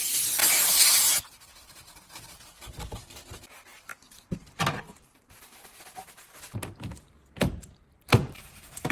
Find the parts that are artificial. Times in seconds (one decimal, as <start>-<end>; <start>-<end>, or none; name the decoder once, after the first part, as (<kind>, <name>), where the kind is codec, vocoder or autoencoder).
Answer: 0.0-8.9 (vocoder, BigVGAN v2)